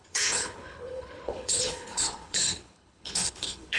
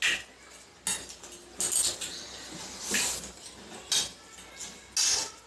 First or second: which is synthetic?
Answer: first